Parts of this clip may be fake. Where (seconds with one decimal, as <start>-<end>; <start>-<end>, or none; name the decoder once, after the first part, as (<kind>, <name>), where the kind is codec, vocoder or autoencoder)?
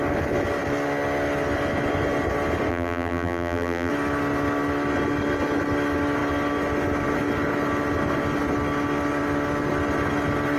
2.7-3.9 (vocoder, BigVGAN v2)